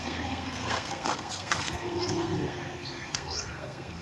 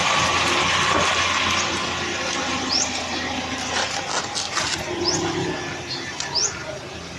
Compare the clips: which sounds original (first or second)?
second